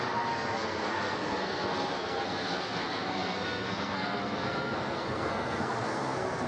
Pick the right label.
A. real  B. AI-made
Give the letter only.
B